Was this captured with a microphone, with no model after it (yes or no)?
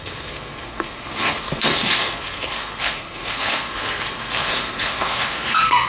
no